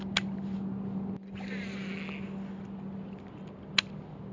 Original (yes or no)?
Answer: yes